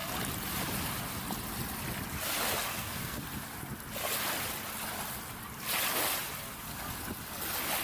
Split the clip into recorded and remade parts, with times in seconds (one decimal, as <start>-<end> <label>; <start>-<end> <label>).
0.0-2.7 recorded; 2.7-3.2 remade; 3.2-7.8 recorded